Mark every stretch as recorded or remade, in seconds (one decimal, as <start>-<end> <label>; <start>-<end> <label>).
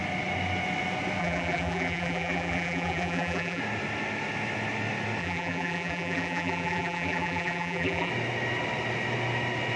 0.0-1.2 recorded; 1.2-3.6 remade; 3.6-5.2 recorded; 5.2-8.1 remade; 8.1-9.8 recorded